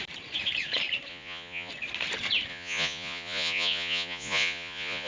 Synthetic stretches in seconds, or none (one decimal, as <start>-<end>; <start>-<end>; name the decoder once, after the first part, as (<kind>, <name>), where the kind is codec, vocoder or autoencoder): 1.1-1.7 (vocoder, Vocos); 2.5-5.1